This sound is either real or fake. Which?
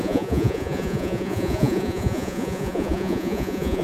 fake